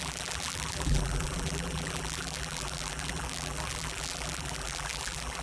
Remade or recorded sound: remade